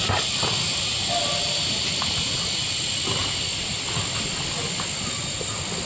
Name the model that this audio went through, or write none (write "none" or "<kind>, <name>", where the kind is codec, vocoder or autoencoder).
none